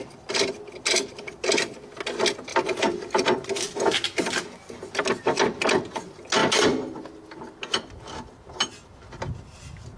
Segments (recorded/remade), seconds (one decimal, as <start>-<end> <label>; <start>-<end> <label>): 0.0-10.0 recorded